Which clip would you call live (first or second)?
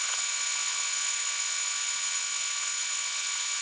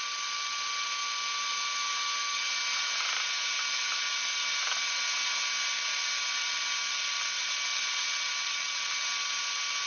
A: second